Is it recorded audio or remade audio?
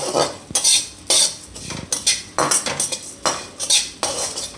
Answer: recorded